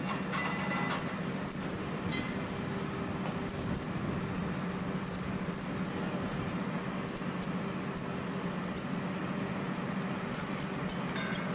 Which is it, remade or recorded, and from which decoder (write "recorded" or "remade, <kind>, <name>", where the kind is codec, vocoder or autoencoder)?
recorded